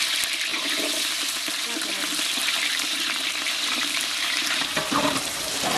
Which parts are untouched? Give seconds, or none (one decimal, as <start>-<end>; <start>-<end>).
0.0-0.5; 1.9-2.4